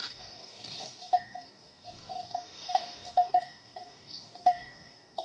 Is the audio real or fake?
fake